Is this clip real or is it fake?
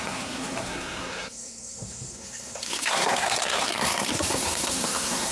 fake